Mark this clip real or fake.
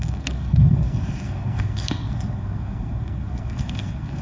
fake